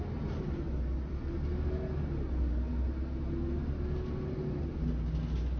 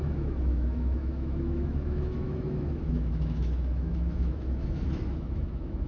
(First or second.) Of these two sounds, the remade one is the second